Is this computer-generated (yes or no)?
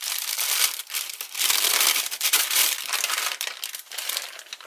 yes